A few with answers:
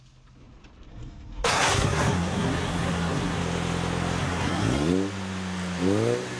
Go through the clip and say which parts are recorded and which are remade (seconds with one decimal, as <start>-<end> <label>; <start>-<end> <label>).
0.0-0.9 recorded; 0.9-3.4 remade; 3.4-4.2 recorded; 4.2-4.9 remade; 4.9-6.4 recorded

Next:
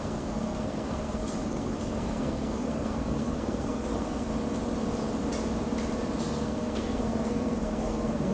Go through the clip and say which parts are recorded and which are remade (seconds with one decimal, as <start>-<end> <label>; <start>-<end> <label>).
0.0-4.3 remade; 4.3-6.2 recorded; 6.2-8.3 remade

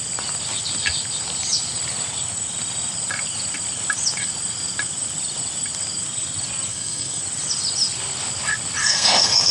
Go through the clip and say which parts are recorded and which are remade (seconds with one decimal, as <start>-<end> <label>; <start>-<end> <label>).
0.0-6.7 recorded; 6.7-7.2 remade; 7.2-8.8 recorded; 8.8-9.5 remade

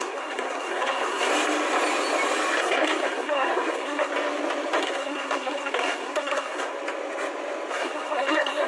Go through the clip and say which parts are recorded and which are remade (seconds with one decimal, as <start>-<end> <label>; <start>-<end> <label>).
0.0-1.3 remade; 1.3-2.6 recorded; 2.6-4.1 remade; 4.1-4.8 recorded; 4.8-6.7 remade; 6.7-7.7 recorded; 7.7-8.7 remade